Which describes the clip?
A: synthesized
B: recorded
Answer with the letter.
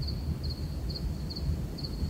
B